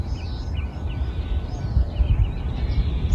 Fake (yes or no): no